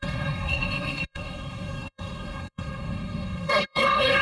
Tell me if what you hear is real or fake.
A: fake